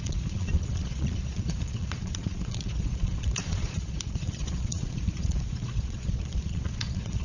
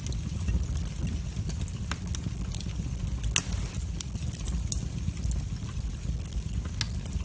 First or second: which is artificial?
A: first